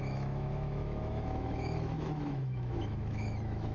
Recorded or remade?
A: remade